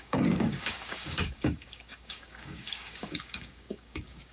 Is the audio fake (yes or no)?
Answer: yes